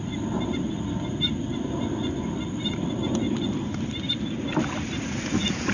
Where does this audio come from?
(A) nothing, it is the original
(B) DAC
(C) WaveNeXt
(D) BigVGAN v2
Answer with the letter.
A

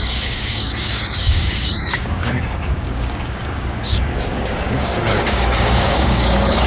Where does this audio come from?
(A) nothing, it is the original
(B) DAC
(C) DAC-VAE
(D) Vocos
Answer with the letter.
B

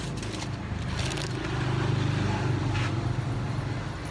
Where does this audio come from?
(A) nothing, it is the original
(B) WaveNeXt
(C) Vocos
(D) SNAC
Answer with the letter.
A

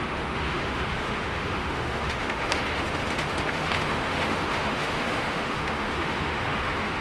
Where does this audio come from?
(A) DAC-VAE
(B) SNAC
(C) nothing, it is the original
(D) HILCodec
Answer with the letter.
A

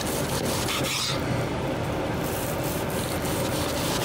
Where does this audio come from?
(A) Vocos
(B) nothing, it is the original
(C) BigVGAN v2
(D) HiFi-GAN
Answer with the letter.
B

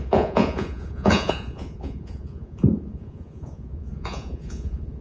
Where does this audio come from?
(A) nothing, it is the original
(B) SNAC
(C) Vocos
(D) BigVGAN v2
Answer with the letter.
C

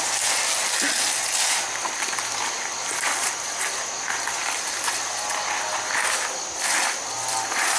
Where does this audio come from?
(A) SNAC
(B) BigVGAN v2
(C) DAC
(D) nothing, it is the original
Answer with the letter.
D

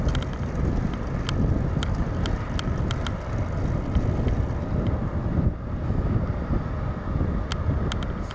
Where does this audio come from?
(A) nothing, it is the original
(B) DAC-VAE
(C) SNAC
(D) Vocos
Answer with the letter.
A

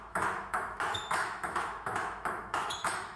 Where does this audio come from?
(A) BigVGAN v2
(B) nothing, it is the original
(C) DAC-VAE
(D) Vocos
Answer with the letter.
C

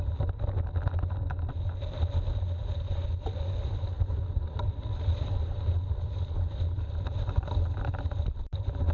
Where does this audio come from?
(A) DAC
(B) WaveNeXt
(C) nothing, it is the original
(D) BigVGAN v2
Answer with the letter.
C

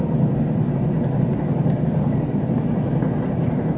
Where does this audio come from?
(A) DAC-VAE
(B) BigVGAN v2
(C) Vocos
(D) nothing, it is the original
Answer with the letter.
D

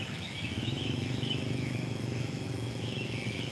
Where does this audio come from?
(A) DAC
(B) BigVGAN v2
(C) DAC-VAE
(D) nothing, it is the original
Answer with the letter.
C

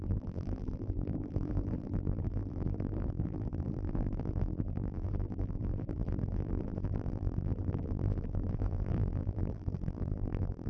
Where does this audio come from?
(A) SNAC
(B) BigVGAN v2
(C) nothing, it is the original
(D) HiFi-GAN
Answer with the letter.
B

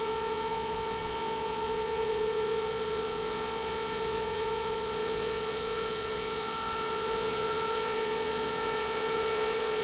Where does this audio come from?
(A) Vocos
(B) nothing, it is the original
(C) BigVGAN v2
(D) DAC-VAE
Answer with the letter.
A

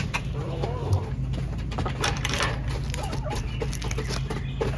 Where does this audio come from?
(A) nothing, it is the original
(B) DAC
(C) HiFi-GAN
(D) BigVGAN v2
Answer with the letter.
A